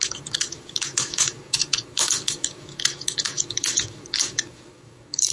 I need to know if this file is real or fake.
fake